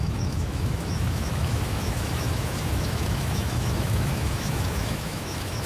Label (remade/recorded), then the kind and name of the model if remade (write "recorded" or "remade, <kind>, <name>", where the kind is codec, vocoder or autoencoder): remade, autoencoder, DAC-VAE